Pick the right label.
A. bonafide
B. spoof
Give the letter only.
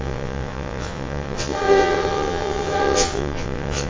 B